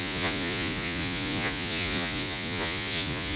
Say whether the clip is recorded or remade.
remade